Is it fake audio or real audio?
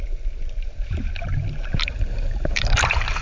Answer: fake